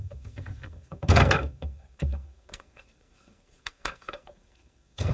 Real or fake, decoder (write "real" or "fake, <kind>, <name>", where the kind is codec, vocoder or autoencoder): fake, codec, SNAC